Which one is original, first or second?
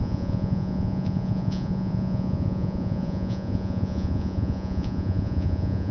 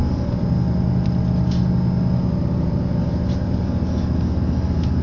second